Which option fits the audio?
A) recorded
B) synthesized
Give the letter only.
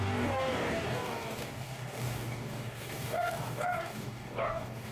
B